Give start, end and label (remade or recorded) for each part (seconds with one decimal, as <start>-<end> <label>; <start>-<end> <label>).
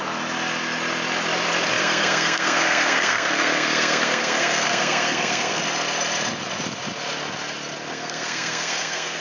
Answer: 0.0-1.8 recorded; 1.8-5.6 remade; 5.6-7.9 recorded; 7.9-9.2 remade